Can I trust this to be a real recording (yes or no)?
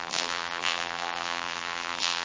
no